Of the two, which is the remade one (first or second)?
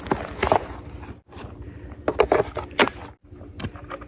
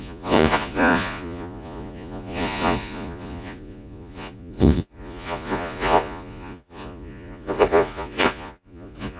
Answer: second